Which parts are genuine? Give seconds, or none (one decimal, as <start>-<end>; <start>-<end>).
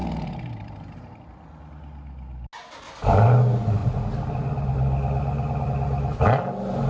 1.0-6.9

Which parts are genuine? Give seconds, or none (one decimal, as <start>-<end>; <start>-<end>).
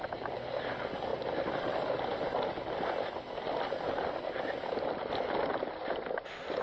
0.0-6.6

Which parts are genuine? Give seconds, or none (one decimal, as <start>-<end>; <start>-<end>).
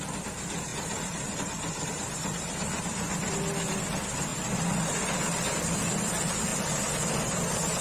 0.0-0.7; 3.3-7.8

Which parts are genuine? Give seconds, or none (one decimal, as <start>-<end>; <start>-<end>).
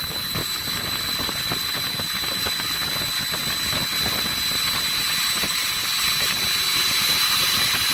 0.4-5.1; 5.6-7.0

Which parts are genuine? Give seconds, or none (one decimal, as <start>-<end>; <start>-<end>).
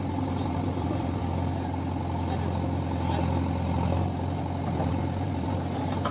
1.2-4.9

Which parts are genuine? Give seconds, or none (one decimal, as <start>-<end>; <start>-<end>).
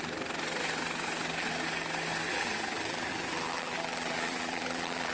0.0-2.3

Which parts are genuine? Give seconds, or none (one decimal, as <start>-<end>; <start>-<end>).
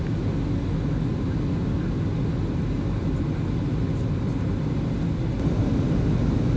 0.0-6.6